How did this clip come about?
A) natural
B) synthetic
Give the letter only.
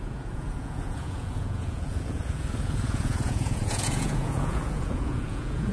B